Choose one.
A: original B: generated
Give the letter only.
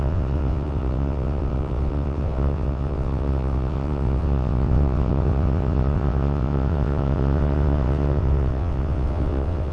B